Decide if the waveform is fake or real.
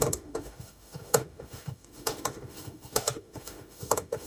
fake